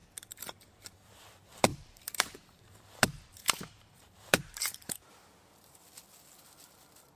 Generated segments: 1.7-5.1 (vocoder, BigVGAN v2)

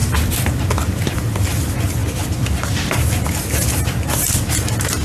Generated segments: none